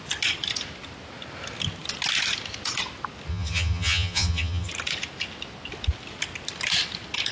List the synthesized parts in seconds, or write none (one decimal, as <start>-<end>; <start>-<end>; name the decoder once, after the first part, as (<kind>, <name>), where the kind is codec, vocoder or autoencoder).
3.3-4.7 (vocoder, HiFi-GAN)